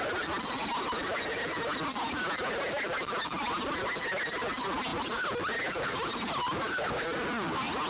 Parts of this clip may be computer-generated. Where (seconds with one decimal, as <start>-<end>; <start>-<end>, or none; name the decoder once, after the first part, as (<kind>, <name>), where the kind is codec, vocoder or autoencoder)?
none